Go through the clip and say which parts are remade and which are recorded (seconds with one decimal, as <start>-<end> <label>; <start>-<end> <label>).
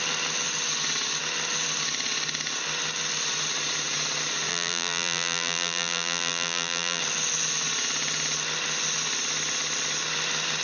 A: 0.0-4.5 recorded; 4.5-7.0 remade; 7.0-10.6 recorded